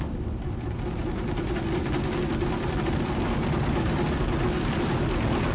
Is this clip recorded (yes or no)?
yes